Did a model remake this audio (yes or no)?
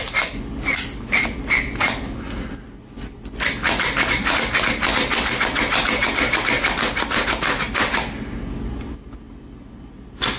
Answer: no